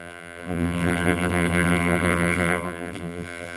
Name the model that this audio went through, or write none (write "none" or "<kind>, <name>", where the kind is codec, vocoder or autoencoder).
vocoder, BigVGAN v2